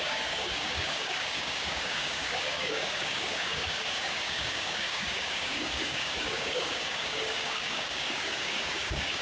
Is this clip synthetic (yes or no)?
yes